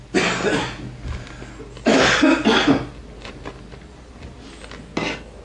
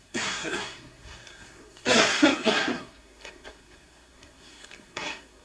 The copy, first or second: second